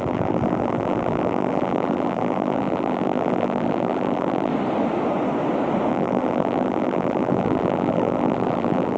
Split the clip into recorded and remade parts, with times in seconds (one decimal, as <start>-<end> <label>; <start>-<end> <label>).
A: 0.0-4.5 remade; 4.5-5.9 recorded; 5.9-9.0 remade